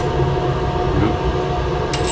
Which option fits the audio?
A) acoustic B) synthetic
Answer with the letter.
A